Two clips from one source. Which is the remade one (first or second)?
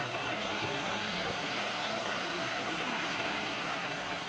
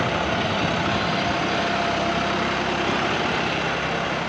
first